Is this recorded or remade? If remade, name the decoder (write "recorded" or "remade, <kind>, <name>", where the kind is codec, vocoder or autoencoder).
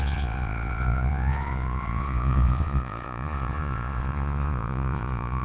remade, vocoder, Vocos